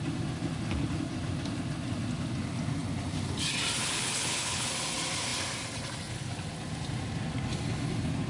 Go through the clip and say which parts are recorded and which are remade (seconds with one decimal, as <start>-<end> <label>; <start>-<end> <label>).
0.0-3.8 recorded; 3.8-4.7 remade; 4.7-8.3 recorded